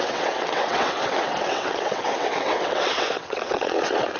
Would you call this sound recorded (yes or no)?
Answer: no